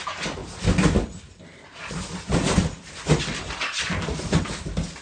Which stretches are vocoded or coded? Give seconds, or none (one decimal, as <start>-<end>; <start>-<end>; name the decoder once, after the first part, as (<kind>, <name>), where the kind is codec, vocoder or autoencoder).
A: none